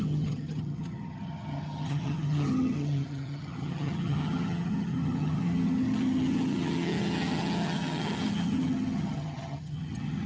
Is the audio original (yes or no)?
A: no